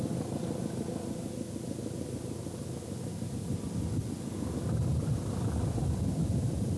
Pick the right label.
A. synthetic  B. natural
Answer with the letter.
B